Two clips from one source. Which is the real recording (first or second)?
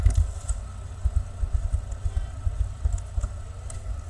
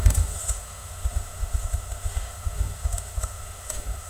first